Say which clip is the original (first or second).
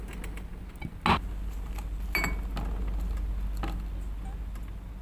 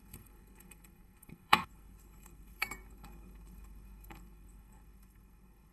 first